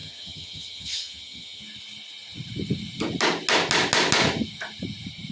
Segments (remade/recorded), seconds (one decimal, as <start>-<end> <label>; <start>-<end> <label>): 0.0-1.6 remade; 1.6-5.3 recorded

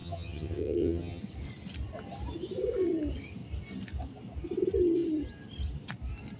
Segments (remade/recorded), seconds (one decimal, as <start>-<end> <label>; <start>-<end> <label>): 0.0-1.2 remade; 1.2-6.4 recorded

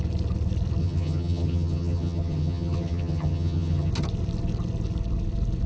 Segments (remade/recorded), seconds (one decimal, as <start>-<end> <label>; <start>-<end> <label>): 0.0-0.8 recorded; 0.8-3.9 remade; 3.9-5.7 recorded

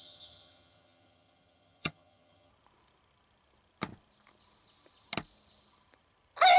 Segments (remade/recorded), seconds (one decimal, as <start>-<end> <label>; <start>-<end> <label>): 0.0-2.5 remade; 2.5-6.6 recorded

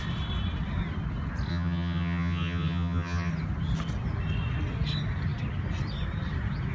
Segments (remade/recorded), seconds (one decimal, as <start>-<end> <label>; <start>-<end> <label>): 0.0-1.5 recorded; 1.5-3.3 remade; 3.3-6.7 recorded

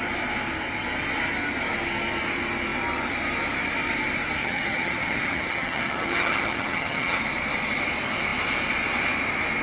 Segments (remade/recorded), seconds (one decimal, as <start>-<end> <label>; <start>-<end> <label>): 0.0-4.4 recorded; 4.4-7.2 remade; 7.2-9.6 recorded